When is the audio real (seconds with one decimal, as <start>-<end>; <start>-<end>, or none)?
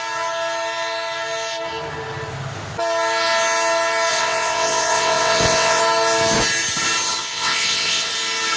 0.0-4.1; 5.8-7.2; 8.1-8.6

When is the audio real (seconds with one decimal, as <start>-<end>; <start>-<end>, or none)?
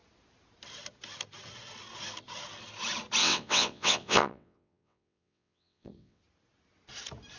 0.0-3.2; 6.2-7.4